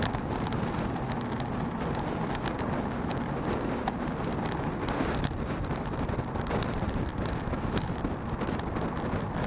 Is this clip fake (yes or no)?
no